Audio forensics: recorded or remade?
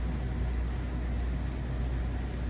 recorded